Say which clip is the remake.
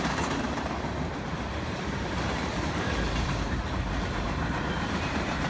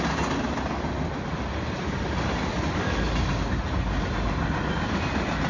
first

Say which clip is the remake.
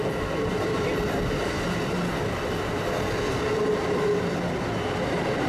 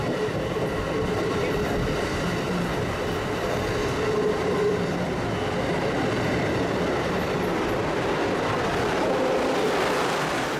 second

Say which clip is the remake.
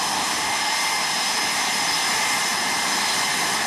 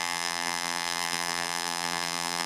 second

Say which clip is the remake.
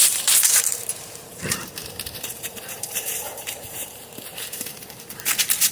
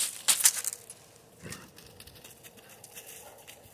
first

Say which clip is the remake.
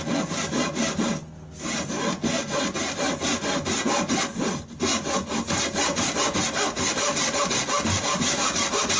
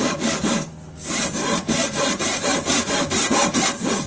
second